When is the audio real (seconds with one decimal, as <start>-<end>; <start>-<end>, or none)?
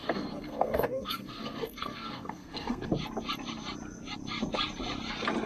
2.9-5.5